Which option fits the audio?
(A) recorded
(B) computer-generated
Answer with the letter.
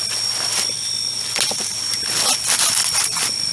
A